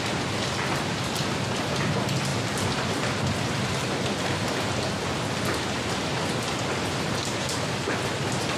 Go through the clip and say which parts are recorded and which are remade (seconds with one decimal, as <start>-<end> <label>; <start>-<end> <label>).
0.0-8.6 recorded

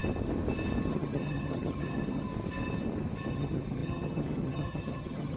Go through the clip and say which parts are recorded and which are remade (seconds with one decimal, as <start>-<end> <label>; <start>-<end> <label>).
0.0-0.9 recorded; 0.9-2.3 remade; 2.3-3.3 recorded; 3.3-5.4 remade

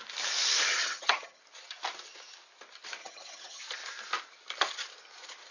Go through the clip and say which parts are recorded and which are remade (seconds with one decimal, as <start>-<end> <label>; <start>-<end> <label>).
0.0-0.8 recorded; 0.8-1.4 remade; 1.4-3.0 recorded; 3.0-3.6 remade; 3.6-5.5 recorded

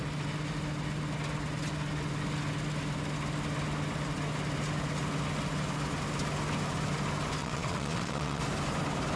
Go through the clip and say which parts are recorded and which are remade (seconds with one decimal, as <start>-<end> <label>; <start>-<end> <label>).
0.0-7.4 recorded; 7.4-8.4 remade; 8.4-9.2 recorded

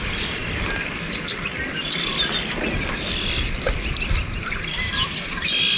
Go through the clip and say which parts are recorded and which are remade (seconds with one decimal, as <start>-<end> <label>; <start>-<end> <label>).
0.0-5.8 recorded